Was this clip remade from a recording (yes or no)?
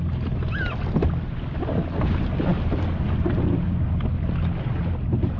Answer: no